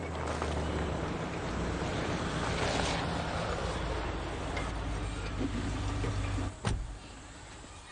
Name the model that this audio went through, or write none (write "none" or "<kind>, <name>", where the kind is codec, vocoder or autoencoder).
none